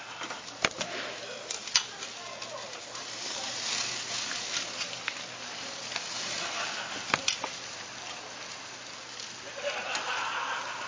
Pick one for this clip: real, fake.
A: real